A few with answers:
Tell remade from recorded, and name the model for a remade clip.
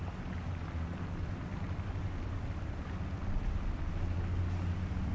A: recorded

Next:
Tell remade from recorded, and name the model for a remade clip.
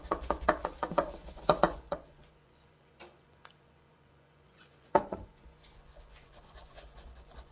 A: remade, vocoder, Vocos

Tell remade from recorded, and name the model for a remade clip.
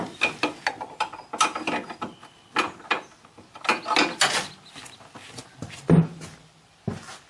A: recorded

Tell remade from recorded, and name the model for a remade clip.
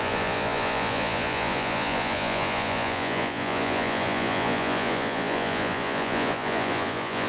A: remade, vocoder, Vocos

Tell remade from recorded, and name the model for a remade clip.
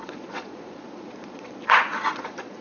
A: remade, vocoder, Vocos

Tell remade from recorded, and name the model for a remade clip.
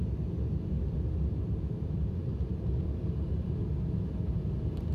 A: recorded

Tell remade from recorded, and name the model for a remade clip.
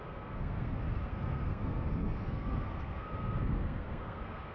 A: remade, codec, SNAC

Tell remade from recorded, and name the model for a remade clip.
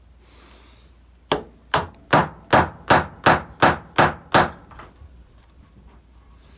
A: recorded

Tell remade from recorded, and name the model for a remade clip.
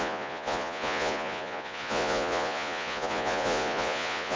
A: remade, vocoder, Vocos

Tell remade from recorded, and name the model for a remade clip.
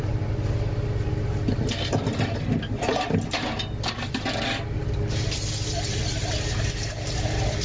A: recorded